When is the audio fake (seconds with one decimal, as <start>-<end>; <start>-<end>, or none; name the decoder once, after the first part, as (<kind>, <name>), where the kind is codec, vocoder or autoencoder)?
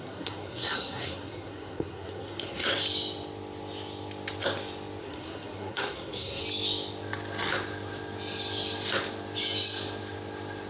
0.0-2.7 (codec, SNAC); 5.0-6.4